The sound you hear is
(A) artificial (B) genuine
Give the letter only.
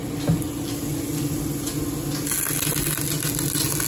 B